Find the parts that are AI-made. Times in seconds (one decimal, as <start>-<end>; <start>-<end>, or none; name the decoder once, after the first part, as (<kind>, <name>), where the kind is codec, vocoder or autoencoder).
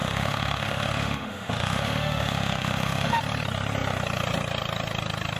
0.0-3.2 (autoencoder, DAC-VAE)